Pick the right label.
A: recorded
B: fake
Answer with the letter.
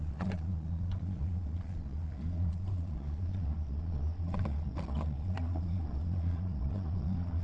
B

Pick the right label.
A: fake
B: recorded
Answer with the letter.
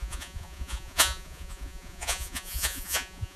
A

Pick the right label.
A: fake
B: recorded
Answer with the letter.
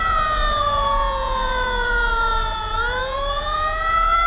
A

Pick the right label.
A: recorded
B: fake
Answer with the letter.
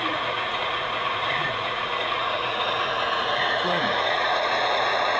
B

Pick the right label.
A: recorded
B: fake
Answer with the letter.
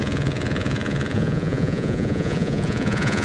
B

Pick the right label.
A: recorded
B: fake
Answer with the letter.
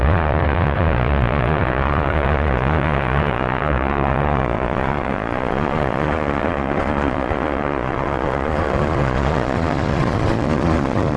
B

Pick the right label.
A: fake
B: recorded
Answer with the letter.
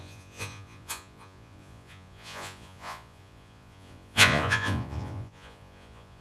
A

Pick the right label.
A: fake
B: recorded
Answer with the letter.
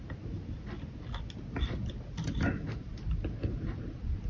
B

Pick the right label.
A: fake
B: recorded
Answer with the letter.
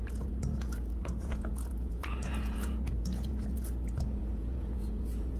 A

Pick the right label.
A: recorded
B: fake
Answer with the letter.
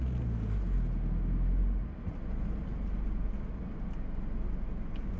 A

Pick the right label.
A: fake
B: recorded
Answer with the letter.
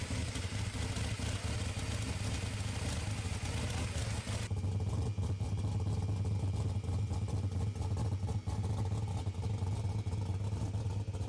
B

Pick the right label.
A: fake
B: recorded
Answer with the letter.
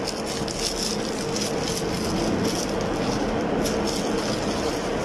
B